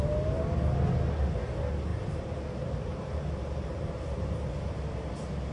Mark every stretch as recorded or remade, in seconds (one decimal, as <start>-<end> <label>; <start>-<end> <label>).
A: 0.0-1.9 recorded; 1.9-4.5 remade; 4.5-5.5 recorded